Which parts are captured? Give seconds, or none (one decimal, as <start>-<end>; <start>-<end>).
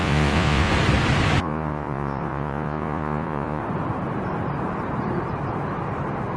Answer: 0.7-1.4; 3.6-6.4